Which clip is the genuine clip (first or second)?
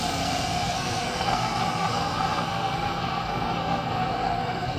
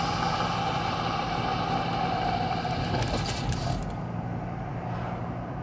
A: second